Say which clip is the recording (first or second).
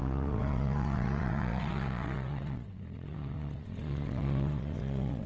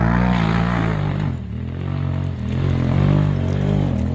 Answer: second